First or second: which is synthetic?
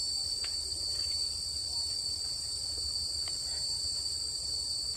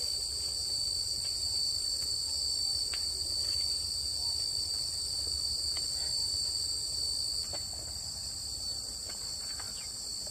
first